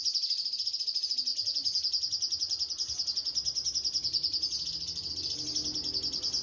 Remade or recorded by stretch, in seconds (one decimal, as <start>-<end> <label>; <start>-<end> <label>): 0.0-6.4 recorded